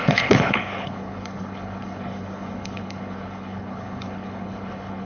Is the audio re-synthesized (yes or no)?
yes